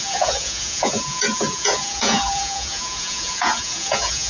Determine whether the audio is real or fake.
fake